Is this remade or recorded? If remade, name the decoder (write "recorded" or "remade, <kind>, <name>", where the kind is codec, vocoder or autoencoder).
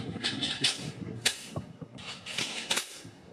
remade, codec, SNAC